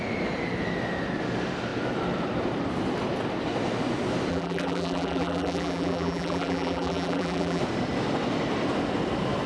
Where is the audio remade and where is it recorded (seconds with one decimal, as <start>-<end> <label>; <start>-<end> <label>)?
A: 0.0-4.3 recorded; 4.3-7.6 remade; 7.6-9.5 recorded